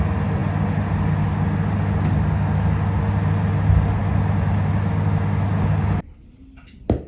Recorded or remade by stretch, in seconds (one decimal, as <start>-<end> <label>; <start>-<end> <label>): 0.0-7.1 recorded